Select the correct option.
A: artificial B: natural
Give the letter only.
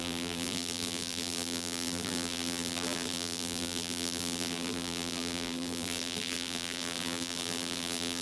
A